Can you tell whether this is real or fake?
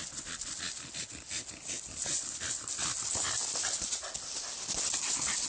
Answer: real